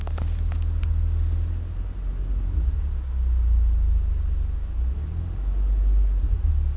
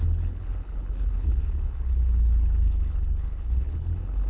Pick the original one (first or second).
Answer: first